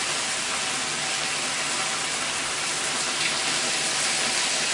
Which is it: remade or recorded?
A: recorded